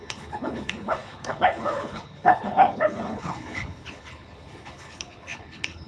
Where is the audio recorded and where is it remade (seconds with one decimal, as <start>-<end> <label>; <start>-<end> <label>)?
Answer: 0.0-5.9 remade